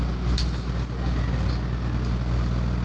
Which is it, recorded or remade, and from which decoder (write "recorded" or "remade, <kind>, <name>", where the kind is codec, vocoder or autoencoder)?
recorded